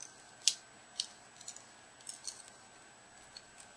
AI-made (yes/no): no